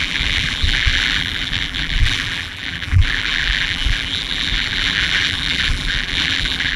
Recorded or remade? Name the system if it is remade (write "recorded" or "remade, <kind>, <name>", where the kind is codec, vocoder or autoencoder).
remade, vocoder, BigVGAN v2